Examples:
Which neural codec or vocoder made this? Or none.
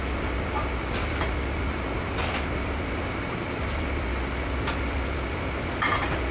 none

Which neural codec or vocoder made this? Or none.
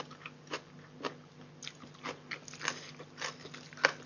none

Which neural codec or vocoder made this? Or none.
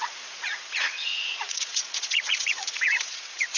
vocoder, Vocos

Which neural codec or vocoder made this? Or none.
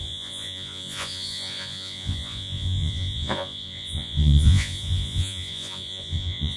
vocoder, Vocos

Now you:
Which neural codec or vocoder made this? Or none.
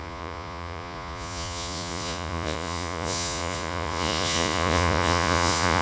vocoder, Vocos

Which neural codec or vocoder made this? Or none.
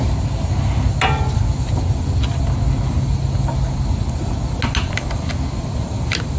none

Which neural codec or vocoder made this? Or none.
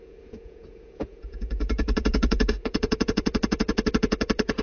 vocoder, Vocos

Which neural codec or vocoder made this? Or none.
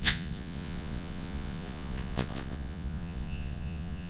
vocoder, Vocos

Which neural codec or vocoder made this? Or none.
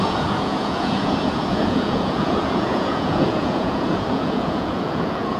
vocoder, Vocos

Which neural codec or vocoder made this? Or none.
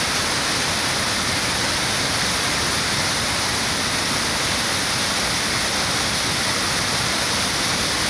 none